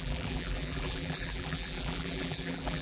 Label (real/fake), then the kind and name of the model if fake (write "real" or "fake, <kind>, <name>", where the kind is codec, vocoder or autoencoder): fake, vocoder, BigVGAN v2